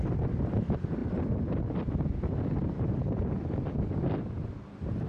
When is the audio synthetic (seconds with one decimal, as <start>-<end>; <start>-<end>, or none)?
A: none